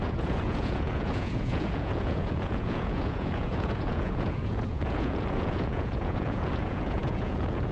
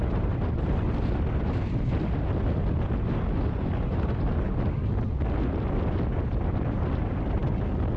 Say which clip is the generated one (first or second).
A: first